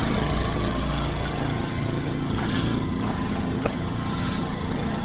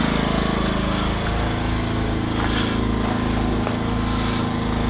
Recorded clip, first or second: second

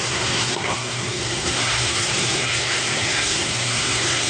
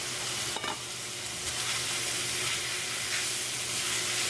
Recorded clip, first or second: second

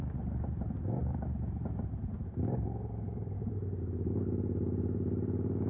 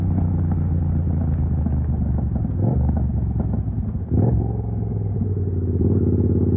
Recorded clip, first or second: second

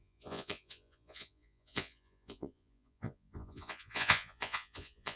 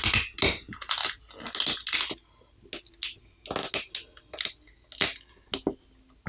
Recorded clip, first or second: second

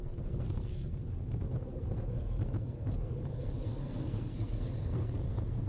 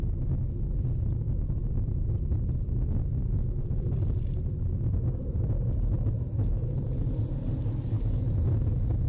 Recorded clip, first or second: second